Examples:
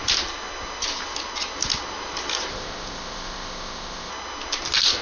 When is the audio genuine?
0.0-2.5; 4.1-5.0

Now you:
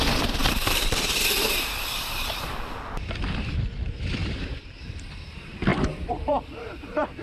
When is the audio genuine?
0.0-0.4; 3.2-4.2; 4.9-5.7

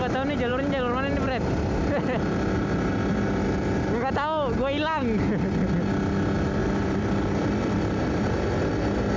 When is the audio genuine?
0.0-6.6; 8.6-9.2

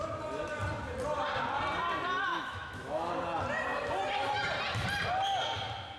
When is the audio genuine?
0.0-2.3; 3.1-6.0

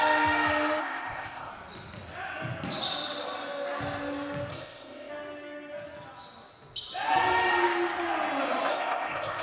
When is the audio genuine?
0.0-0.8; 1.5-4.5; 5.1-8.7

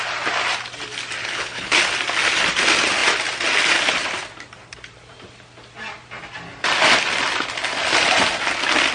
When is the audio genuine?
0.0-1.2; 1.8-8.9